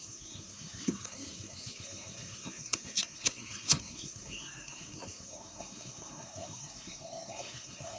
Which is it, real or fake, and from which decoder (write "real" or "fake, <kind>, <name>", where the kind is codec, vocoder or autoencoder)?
fake, codec, SNAC